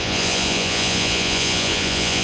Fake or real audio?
fake